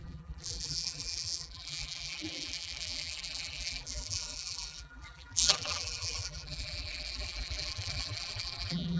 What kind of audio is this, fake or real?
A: fake